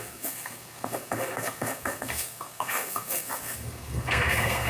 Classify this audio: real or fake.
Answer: fake